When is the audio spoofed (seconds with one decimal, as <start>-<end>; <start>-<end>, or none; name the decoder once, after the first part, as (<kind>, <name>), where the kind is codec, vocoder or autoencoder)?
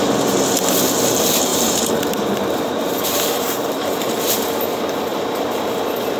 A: 1.5-4.2 (vocoder, BigVGAN v2); 5.1-5.8